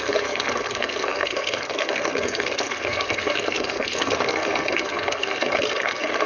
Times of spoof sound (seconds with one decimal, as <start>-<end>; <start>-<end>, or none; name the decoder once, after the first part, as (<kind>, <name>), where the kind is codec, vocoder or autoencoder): 0.0-6.3 (codec, SNAC)